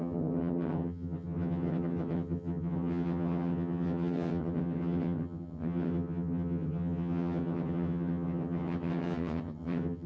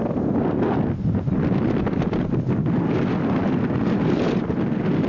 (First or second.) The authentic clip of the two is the second